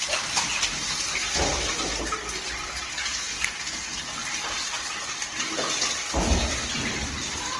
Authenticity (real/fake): real